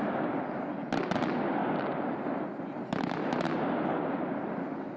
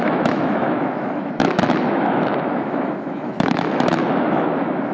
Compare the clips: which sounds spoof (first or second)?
second